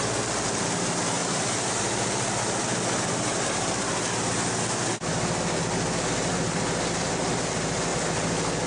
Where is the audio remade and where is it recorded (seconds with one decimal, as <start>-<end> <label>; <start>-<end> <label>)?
0.0-1.2 recorded; 1.2-1.8 remade; 1.8-3.3 recorded; 3.3-3.9 remade; 3.9-8.7 recorded